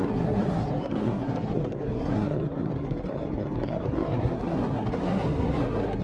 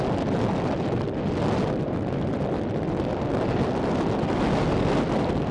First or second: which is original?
second